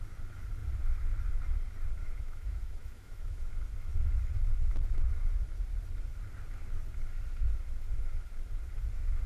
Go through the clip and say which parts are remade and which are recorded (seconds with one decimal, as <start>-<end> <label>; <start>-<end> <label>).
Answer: 0.0-2.0 recorded; 2.0-3.5 remade; 3.5-9.3 recorded